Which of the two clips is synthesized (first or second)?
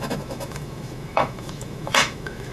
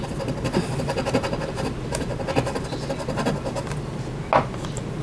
first